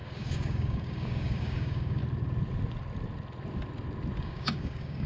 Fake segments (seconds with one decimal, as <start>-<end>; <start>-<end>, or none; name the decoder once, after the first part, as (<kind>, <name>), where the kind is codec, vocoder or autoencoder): 0.0-2.0 (codec, DAC); 4.2-5.1